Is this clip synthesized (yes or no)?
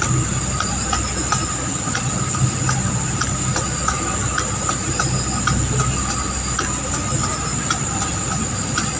no